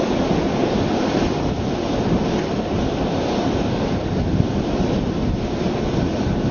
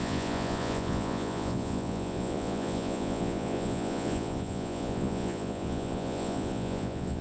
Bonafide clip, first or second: first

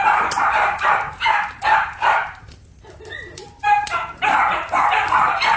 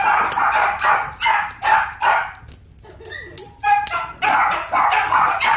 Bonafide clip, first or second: second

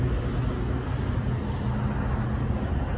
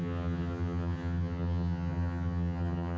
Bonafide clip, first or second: first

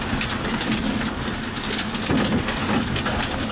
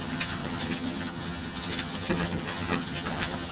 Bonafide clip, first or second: first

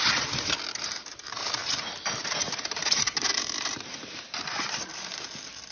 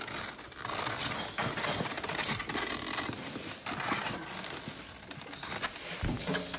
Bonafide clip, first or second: second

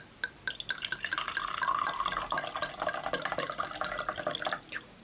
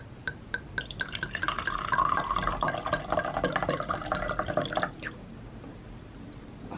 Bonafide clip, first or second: first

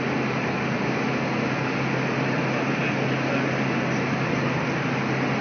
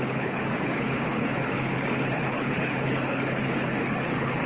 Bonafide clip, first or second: first